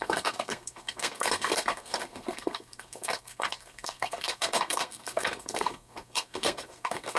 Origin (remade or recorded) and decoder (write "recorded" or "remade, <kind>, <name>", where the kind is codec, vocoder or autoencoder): remade, codec, SNAC